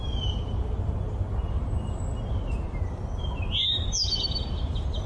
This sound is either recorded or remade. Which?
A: recorded